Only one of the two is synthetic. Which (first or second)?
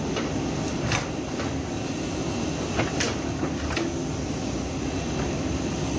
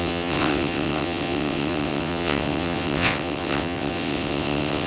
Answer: second